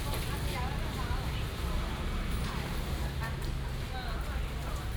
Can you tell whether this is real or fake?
real